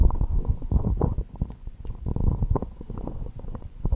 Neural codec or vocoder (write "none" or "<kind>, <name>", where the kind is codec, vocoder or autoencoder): vocoder, Vocos